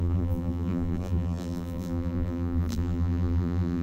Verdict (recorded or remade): remade